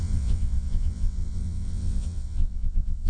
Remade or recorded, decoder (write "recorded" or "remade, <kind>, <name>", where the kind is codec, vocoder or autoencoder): remade, vocoder, WaveNeXt